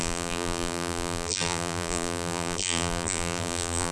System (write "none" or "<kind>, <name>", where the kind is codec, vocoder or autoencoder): vocoder, BigVGAN v2